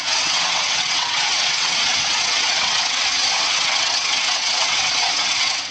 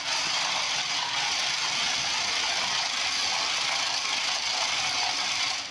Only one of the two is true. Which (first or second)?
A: second